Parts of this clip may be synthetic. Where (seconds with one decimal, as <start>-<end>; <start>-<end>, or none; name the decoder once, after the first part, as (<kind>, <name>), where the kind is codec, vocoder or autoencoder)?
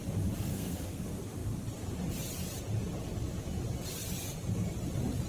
0.5-1.0 (codec, SNAC)